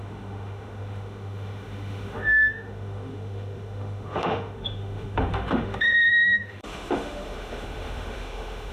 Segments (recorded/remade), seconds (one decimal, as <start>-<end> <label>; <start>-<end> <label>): 0.0-8.7 remade